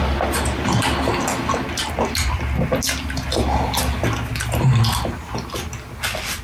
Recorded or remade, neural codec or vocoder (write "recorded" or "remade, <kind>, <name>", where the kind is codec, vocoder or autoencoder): recorded